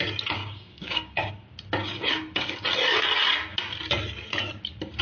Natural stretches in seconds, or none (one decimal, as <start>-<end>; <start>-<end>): 0.0-0.4; 1.3-1.8; 2.5-5.0